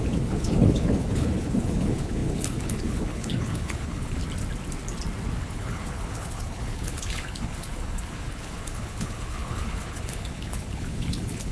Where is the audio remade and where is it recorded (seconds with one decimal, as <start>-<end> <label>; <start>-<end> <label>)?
0.0-4.2 remade; 4.2-5.4 recorded; 5.4-11.5 remade